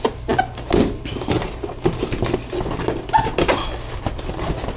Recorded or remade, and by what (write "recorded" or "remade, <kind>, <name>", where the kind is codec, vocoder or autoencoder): recorded